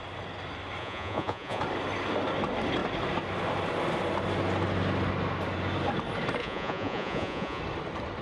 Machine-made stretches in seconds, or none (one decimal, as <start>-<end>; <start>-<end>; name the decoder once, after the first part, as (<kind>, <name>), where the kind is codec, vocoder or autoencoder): 0.8-1.6 (vocoder, Vocos); 6.4-7.6

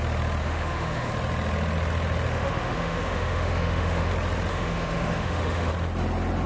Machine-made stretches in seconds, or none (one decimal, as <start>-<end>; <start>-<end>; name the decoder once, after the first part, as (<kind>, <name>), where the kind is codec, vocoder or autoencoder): 0.4-1.1 (autoencoder, DAC-VAE); 2.3-4.1; 4.5-5.7

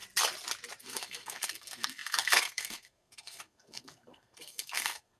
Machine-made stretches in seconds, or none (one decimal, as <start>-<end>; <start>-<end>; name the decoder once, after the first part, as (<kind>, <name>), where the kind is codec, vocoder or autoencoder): 0.8-5.2 (codec, SNAC)